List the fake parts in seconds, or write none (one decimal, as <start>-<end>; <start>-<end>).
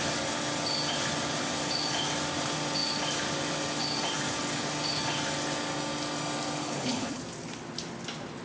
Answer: 6.6-7.2